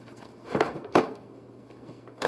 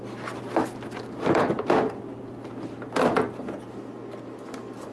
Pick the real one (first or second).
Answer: second